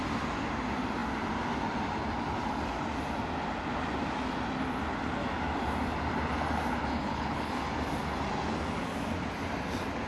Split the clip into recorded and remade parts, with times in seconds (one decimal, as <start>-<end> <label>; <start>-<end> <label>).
0.0-6.9 recorded; 6.9-7.5 remade; 7.5-10.1 recorded